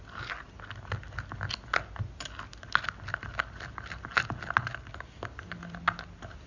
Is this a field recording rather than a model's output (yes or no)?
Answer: yes